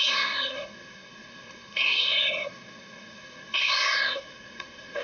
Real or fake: fake